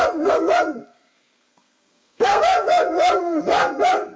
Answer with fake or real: fake